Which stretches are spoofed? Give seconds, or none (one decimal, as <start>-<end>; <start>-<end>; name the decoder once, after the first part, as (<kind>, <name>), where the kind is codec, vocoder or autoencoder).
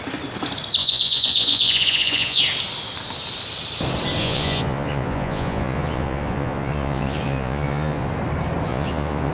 0.8-2.4 (vocoder, Vocos); 4.2-8.1; 8.7-9.3